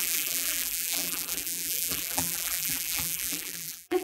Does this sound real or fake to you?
fake